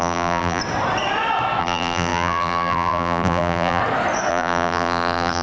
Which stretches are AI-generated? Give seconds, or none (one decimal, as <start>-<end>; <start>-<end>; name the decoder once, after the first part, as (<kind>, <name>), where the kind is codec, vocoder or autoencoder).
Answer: 0.0-0.6 (vocoder, BigVGAN v2); 1.6-3.8; 4.3-5.4